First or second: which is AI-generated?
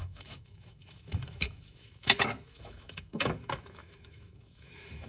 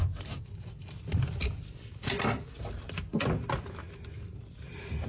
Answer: first